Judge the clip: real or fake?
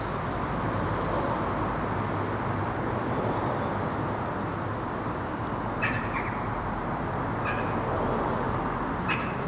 real